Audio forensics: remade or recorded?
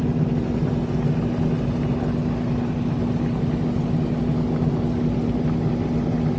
recorded